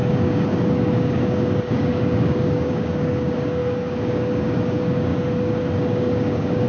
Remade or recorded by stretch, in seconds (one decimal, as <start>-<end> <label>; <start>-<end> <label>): 0.0-6.7 remade